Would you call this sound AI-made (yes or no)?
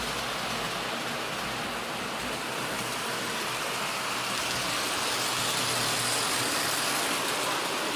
no